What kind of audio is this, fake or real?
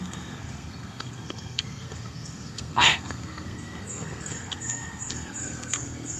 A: fake